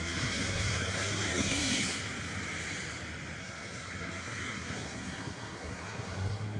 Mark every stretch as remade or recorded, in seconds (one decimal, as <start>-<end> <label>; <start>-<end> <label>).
0.0-2.0 remade; 2.0-3.4 recorded; 3.4-6.6 remade